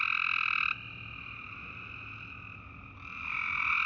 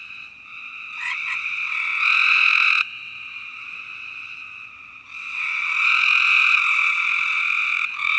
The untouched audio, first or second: first